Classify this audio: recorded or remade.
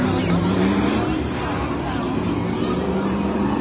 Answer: recorded